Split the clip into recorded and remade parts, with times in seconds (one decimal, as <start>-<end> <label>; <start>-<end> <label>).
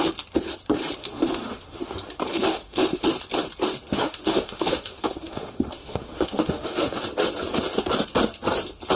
0.0-1.0 recorded; 1.0-1.8 remade; 1.8-2.3 recorded; 2.3-3.0 remade; 3.0-3.9 recorded; 3.9-7.0 remade; 7.0-9.0 recorded